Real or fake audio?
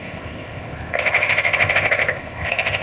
fake